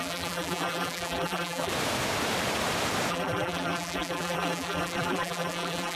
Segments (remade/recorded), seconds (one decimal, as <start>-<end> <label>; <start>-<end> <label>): 0.0-1.7 remade; 1.7-3.1 recorded; 3.1-5.9 remade